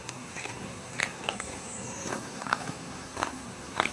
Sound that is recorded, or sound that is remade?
remade